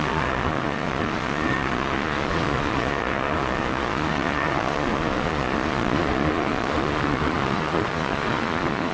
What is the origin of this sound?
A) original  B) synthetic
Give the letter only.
B